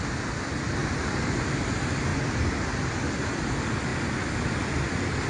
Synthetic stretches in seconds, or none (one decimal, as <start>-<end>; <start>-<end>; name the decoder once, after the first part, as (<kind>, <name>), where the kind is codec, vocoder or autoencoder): 0.8-1.5 (vocoder, BigVGAN v2)

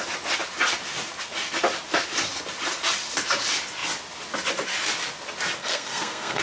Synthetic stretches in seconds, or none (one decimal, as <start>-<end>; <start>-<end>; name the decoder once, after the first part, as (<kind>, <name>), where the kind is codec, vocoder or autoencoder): 5.6-6.4 (codec, SNAC)

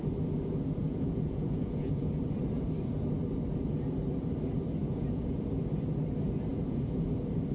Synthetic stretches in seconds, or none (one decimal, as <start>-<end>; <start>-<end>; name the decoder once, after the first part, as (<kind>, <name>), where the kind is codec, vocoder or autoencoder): 0.8-2.1 (vocoder, Vocos); 4.8-5.4; 6.5-7.1

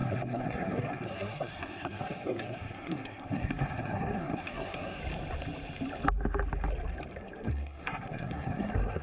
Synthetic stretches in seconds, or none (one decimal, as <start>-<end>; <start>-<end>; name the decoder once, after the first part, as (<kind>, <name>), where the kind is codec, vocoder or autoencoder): 0.0-5.0 (codec, SNAC); 7.2-9.0

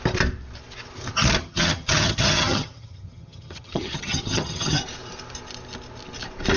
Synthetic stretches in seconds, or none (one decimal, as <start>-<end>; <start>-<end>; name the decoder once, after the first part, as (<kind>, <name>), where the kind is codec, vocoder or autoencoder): 1.4-4.8 (vocoder, HiFi-GAN)